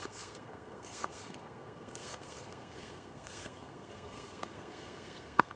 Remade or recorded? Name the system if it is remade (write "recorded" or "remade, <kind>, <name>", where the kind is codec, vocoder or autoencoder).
remade, codec, SNAC